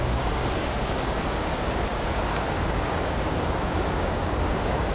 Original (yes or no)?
no